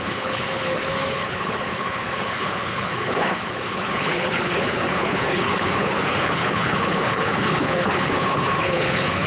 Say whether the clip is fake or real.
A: fake